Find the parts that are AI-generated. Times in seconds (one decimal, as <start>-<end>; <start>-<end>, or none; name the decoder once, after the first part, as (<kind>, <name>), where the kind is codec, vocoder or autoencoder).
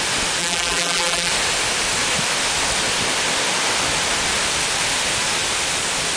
0.4-1.3 (vocoder, BigVGAN v2)